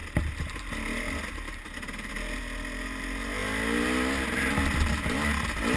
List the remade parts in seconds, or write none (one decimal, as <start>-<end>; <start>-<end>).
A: none